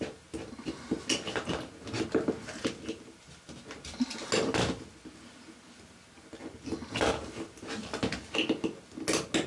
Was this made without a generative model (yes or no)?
yes